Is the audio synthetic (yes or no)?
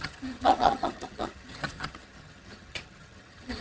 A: yes